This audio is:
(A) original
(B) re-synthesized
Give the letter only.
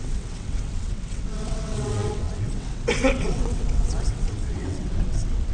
B